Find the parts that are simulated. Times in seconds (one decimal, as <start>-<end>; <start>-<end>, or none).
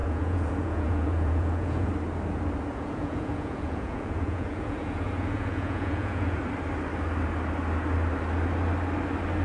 0.0-1.9; 2.7-6.4